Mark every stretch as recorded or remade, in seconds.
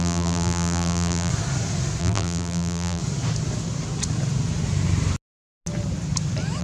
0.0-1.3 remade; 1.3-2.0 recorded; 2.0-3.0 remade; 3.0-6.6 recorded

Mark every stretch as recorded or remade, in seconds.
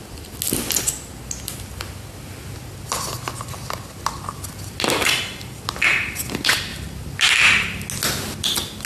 0.0-8.9 recorded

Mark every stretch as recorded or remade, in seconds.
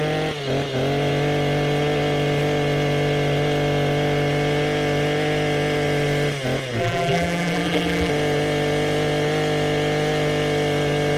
0.0-6.8 recorded; 6.8-8.1 remade; 8.1-11.2 recorded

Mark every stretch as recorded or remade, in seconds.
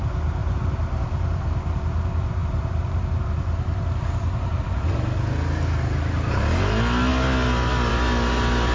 0.0-0.4 recorded; 0.4-1.4 remade; 1.4-2.4 recorded; 2.4-3.1 remade; 3.1-8.7 recorded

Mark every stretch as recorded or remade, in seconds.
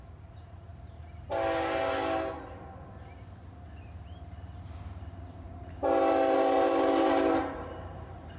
0.0-0.7 remade; 0.7-4.9 recorded; 4.9-8.4 remade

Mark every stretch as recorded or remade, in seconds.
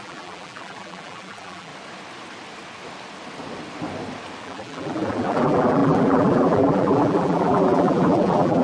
0.0-1.7 remade; 1.7-4.4 recorded; 4.4-8.6 remade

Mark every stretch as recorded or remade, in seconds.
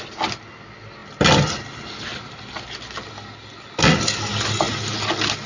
0.0-5.5 recorded